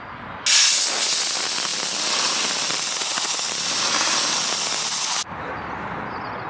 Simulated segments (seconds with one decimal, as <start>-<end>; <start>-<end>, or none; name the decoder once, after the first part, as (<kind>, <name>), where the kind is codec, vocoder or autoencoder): none